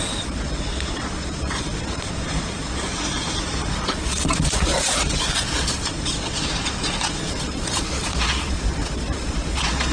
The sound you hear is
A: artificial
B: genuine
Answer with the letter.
A